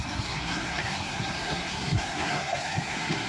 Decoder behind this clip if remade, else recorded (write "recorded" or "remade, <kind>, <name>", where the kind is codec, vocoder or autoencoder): remade, codec, SNAC